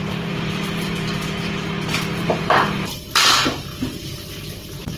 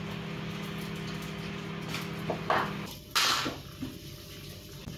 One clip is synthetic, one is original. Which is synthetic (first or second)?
first